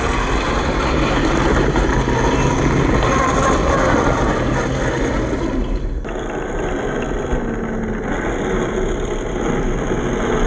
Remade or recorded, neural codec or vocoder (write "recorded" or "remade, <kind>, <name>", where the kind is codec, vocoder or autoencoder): recorded